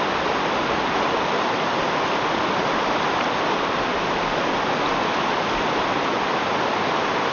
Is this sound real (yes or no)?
yes